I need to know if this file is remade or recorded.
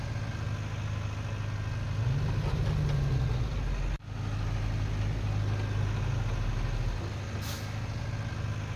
recorded